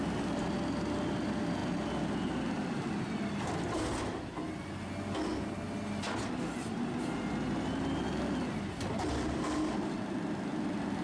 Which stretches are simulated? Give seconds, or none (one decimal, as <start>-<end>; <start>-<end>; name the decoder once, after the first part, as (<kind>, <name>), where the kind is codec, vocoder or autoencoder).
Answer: none